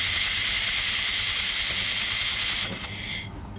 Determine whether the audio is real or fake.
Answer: real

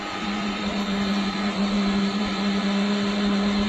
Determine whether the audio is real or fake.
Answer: fake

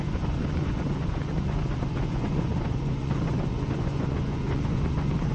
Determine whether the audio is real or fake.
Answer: fake